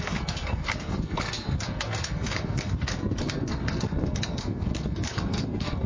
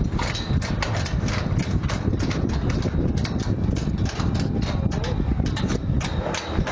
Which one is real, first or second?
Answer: second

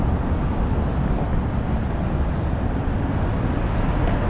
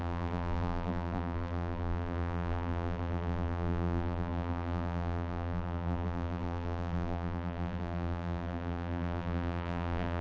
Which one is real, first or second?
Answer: first